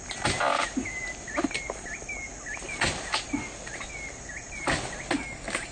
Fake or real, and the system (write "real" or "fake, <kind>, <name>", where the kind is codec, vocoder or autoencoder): real